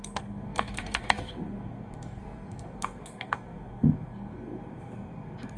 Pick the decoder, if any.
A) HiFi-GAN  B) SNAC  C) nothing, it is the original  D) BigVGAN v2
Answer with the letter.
B